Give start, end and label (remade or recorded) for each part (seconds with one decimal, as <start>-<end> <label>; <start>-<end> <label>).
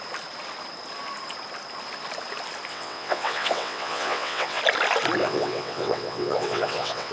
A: 0.0-2.7 recorded; 2.7-4.6 remade; 4.6-5.2 recorded; 5.2-7.1 remade